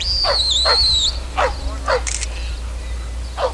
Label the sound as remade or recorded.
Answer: recorded